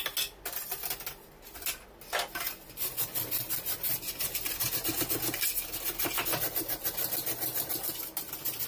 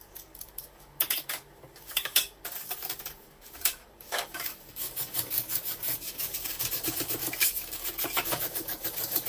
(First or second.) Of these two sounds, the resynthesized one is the second